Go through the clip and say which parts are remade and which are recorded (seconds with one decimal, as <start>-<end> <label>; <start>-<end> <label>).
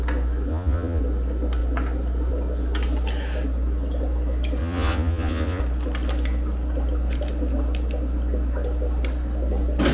0.0-0.5 recorded; 0.5-1.0 remade; 1.0-4.6 recorded; 4.6-5.6 remade; 5.6-9.9 recorded